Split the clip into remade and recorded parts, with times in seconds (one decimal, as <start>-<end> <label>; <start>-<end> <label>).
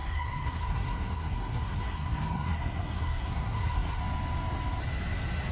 0.0-4.0 remade; 4.0-5.5 recorded